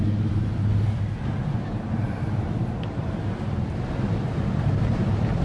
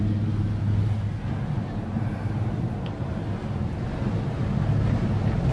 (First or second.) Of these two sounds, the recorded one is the second